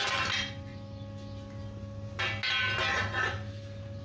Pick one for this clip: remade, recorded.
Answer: recorded